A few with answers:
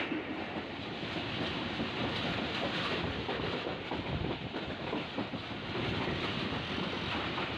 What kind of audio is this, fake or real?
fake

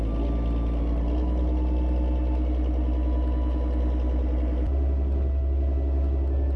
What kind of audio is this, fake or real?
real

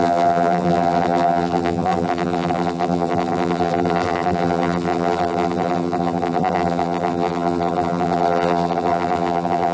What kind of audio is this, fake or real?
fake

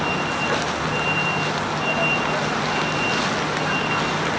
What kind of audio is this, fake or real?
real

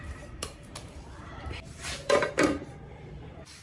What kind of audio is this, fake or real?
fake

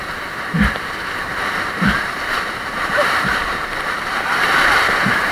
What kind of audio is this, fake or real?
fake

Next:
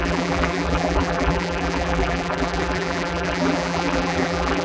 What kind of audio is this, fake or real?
fake